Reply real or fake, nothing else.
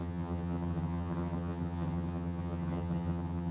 fake